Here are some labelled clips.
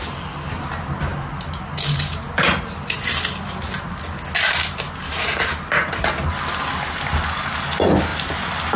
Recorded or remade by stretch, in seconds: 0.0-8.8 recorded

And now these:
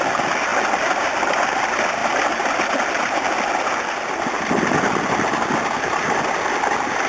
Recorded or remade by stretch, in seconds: 0.0-7.1 recorded

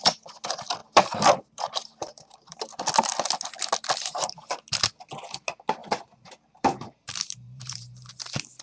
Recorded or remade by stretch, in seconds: 0.0-0.8 recorded; 0.8-2.9 remade; 2.9-5.8 recorded; 5.8-8.1 remade; 8.1-8.6 recorded

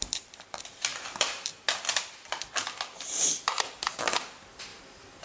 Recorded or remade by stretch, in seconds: 0.0-5.2 recorded

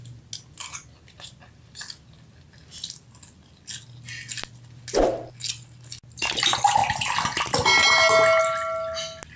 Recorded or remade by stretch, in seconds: 0.0-9.4 recorded

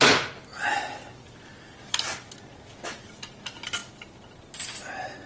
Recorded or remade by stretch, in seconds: 0.0-5.3 recorded